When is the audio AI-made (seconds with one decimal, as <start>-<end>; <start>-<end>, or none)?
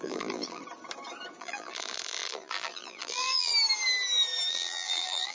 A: 0.0-0.6; 1.4-3.5; 4.5-5.3